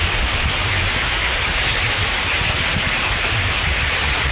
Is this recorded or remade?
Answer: recorded